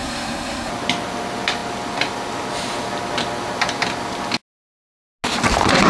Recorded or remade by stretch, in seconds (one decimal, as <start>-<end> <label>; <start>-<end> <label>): 0.0-0.7 remade; 0.7-5.9 recorded